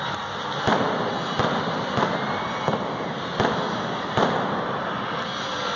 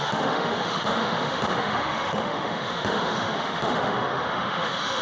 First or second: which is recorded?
first